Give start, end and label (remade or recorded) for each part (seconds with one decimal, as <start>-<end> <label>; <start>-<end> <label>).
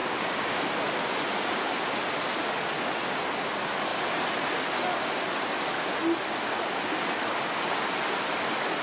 0.0-0.6 remade; 0.6-8.8 recorded